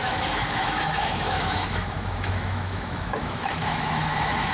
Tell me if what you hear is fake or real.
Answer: fake